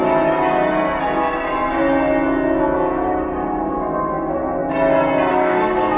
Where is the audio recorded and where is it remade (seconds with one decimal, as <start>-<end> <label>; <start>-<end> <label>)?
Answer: 0.0-5.3 recorded; 5.3-6.0 remade